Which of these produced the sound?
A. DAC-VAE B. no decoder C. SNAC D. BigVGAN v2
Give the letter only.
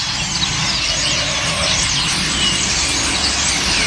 B